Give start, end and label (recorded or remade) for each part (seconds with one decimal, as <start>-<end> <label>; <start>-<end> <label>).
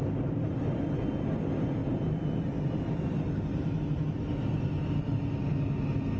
0.0-6.2 recorded